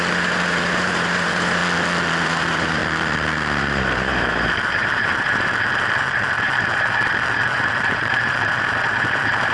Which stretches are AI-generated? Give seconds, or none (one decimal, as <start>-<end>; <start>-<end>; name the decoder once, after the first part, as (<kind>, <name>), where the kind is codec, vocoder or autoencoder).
0.0-1.6 (vocoder, BigVGAN v2); 2.2-2.8; 3.6-9.5